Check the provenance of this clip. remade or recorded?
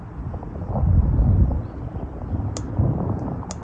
recorded